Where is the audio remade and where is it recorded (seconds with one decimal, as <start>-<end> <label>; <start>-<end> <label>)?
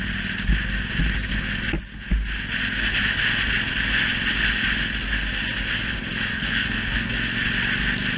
0.0-6.3 recorded; 6.3-7.1 remade; 7.1-8.2 recorded